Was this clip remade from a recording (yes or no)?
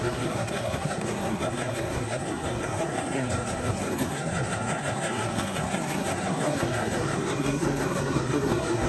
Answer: yes